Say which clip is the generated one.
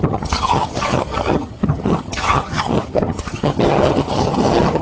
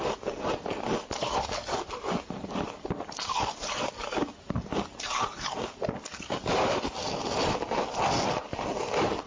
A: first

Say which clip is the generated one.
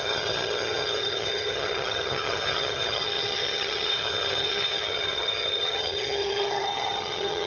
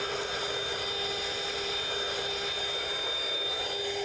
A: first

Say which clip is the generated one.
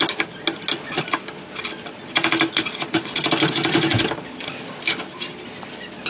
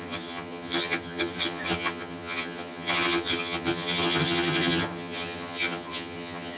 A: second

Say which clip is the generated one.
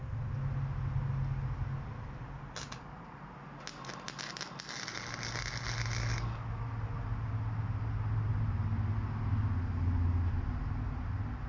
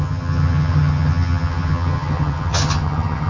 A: second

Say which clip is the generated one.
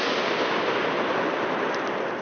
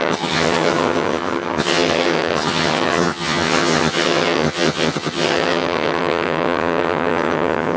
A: second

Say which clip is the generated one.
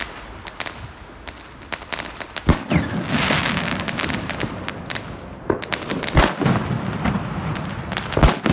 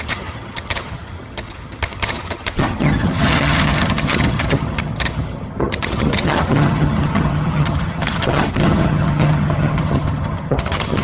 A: second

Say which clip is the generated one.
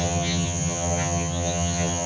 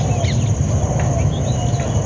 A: first